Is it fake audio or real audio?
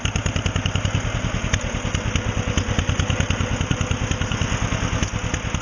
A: real